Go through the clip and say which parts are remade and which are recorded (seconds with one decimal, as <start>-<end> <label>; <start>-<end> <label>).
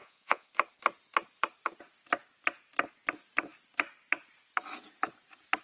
0.0-0.5 remade; 0.5-5.6 recorded